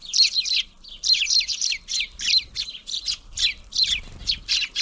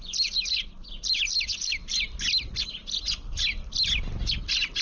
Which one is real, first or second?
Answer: second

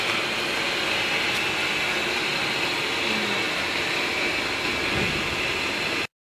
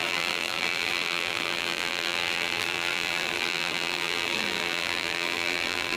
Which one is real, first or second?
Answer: first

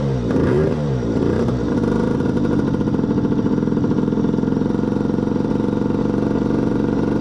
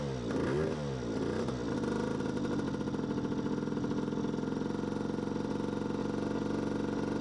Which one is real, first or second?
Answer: second